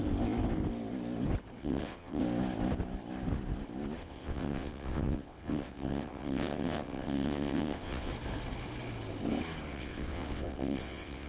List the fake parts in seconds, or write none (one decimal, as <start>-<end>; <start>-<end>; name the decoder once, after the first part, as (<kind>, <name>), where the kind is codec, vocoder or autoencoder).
1.6-2.2 (vocoder, WaveNeXt); 4.0-8.1; 9.7-11.3

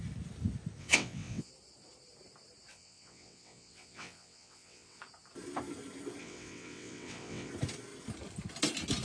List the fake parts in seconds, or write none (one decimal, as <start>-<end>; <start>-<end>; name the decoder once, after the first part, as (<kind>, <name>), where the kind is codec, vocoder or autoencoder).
0.8-1.5 (vocoder, WaveNeXt); 2.7-5.0; 6.2-7.5

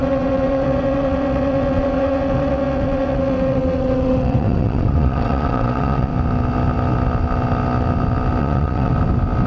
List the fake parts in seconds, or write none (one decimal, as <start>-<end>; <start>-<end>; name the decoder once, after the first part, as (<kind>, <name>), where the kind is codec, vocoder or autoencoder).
0.0-6.1 (vocoder, WaveNeXt); 8.4-8.9

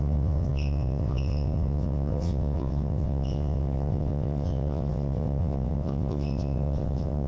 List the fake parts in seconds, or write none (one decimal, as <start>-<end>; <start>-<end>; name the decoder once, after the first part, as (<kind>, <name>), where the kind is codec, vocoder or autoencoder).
0.0-7.3 (vocoder, WaveNeXt)

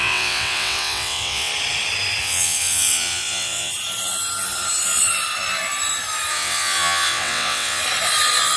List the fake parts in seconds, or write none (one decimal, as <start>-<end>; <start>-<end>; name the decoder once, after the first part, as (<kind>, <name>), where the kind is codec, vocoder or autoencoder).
0.0-1.5 (vocoder, WaveNeXt); 2.2-3.7; 6.3-7.8

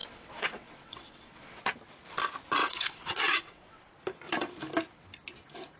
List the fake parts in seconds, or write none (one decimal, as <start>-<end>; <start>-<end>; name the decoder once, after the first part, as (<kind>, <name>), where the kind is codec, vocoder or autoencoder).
0.0-1.6 (vocoder, WaveNeXt); 2.6-3.9

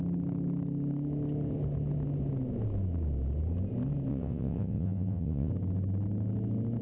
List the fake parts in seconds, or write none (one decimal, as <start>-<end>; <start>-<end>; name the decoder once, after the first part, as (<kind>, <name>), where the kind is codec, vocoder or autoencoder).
4.1-5.5 (vocoder, WaveNeXt)

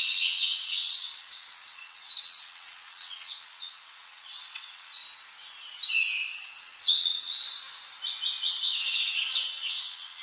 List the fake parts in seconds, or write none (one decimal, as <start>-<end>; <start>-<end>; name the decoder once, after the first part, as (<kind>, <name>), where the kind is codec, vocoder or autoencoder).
0.0-5.0 (vocoder, WaveNeXt); 6.6-7.4; 8.6-10.2